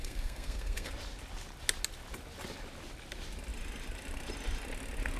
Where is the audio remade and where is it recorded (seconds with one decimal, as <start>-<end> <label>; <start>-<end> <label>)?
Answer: 0.0-0.9 remade; 0.9-5.2 recorded